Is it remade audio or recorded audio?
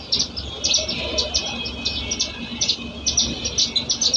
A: recorded